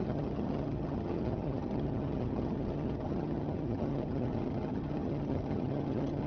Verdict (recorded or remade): remade